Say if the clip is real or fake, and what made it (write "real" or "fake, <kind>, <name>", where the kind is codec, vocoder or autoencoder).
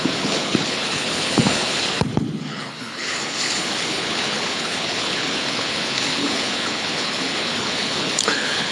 fake, codec, HILCodec